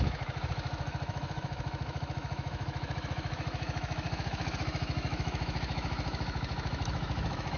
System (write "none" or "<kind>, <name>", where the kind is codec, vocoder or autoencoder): autoencoder, DAC-VAE